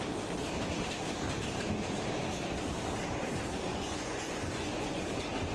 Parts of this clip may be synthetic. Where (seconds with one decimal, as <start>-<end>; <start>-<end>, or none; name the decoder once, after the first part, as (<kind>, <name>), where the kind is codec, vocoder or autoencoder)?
3.7-5.0 (vocoder, Vocos)